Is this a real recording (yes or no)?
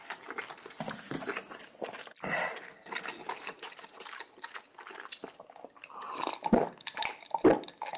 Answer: yes